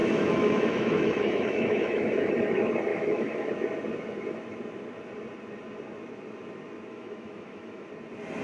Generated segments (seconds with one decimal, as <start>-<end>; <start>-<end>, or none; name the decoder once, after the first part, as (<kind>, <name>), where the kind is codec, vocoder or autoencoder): 0.0-2.3 (autoencoder, DAC-VAE); 2.9-3.5; 6.9-7.9